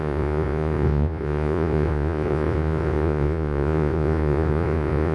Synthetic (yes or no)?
yes